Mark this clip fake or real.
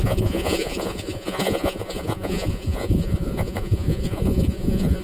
fake